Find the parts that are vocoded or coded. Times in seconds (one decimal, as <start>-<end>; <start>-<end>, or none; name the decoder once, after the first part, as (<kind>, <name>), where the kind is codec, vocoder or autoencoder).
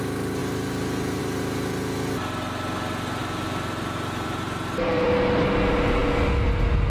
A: 0.4-1.2 (vocoder, BigVGAN v2); 3.2-5.1